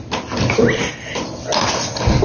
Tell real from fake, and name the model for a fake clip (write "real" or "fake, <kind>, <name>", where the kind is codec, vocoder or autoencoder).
real